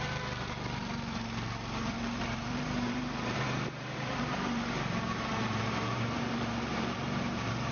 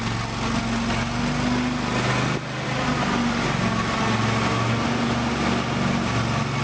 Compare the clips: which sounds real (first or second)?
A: second